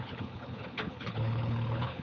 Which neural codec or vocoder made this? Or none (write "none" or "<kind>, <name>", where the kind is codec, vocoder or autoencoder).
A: codec, HILCodec